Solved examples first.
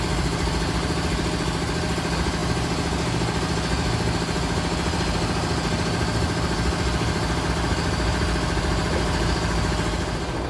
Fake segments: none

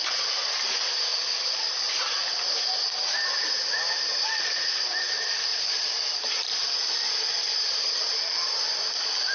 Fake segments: 5.5-8.8 (vocoder, BigVGAN v2)